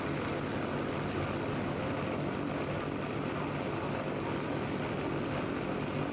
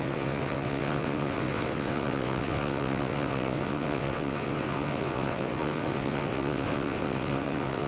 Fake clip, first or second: second